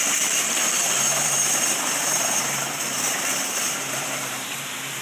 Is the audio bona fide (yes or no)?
no